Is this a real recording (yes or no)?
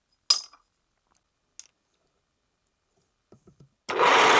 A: yes